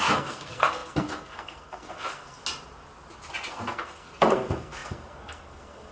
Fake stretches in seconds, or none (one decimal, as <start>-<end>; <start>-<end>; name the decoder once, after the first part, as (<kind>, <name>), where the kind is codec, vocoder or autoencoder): 0.0-2.4 (codec, SNAC); 3.5-5.9